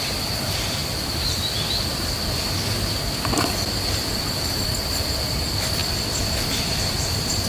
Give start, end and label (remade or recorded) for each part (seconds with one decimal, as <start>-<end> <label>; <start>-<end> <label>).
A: 0.0-0.8 remade; 0.8-1.5 recorded; 1.5-5.8 remade; 5.8-6.6 recorded; 6.6-7.5 remade